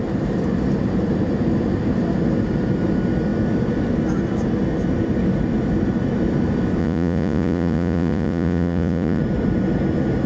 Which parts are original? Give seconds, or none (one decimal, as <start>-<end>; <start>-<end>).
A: 0.0-6.8; 9.2-10.3

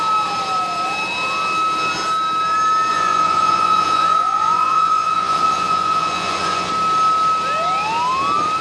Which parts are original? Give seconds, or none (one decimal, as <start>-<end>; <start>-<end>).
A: 0.0-2.9; 6.7-8.6

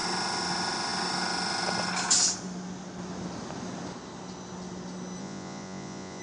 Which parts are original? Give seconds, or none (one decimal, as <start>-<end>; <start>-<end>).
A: 0.0-5.2

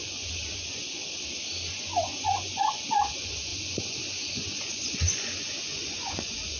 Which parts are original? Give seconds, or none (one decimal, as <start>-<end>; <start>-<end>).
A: 1.0-1.7

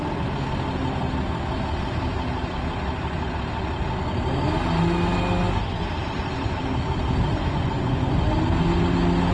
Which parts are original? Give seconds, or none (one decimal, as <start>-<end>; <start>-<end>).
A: 0.0-7.3; 8.3-9.3